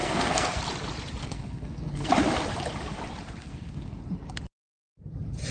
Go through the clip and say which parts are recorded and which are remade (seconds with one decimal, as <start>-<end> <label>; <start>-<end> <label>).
0.0-0.6 remade; 0.6-1.2 recorded; 1.2-2.1 remade; 2.1-3.4 recorded; 3.4-4.0 remade; 4.0-5.5 recorded